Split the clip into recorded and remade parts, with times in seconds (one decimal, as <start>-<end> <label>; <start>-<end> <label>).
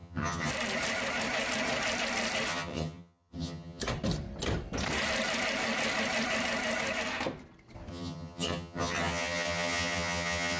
0.0-0.5 remade; 0.5-2.5 recorded; 2.5-3.8 remade; 3.8-7.9 recorded; 7.9-10.6 remade